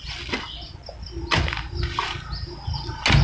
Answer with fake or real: real